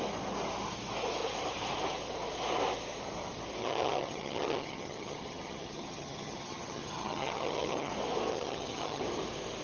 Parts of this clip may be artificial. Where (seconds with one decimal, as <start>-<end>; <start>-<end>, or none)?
3.6-7.9; 8.3-9.0